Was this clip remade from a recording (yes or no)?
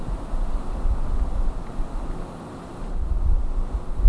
no